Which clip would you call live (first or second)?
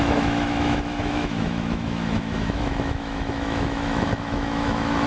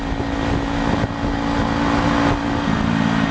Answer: second